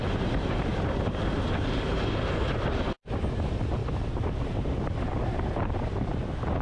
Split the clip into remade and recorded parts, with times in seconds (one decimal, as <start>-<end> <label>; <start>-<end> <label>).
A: 0.0-6.6 remade